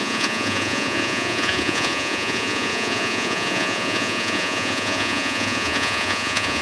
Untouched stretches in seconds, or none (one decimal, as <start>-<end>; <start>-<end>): none